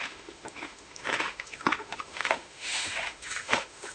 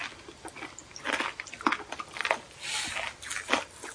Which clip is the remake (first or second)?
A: first